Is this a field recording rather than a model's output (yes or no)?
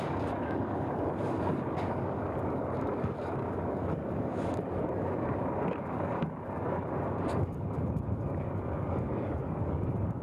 no